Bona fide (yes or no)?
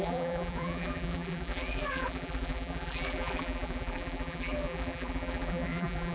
no